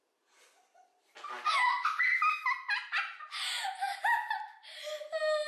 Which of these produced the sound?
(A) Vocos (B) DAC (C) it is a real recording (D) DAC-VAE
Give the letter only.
C